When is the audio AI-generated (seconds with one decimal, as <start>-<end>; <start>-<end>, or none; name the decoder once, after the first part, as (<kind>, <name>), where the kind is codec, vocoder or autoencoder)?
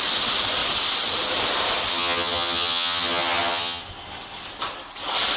1.9-3.8 (vocoder, HiFi-GAN)